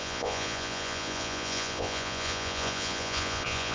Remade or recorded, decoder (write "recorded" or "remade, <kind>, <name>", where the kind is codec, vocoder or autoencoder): remade, vocoder, Vocos